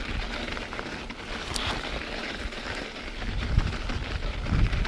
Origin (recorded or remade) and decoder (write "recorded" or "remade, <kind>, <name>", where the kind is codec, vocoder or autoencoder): remade, vocoder, BigVGAN v2